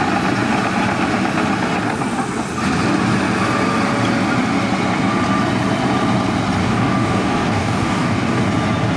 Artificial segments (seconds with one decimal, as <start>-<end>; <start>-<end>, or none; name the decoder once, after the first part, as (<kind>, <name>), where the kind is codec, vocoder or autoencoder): 6.6-8.4 (codec, DAC)

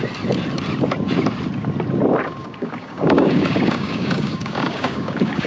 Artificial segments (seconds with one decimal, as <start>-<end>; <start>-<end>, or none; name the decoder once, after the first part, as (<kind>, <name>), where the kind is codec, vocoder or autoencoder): 2.4-5.5 (codec, DAC)

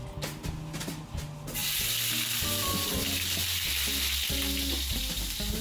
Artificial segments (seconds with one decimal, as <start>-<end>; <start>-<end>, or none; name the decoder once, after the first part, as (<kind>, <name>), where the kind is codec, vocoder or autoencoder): none

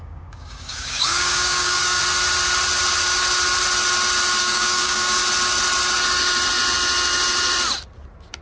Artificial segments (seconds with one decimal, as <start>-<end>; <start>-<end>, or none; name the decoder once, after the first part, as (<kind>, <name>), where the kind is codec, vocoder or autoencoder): 0.0-2.0 (codec, DAC); 4.4-5.2

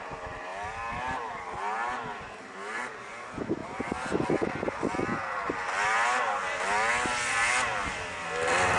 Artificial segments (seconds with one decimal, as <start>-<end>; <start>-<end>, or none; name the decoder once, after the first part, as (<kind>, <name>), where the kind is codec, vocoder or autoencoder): none

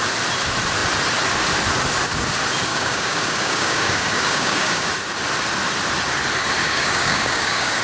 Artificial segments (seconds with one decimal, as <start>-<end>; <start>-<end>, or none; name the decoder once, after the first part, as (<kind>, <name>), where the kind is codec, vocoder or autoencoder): 2.7-4.9 (codec, DAC); 6.6-7.8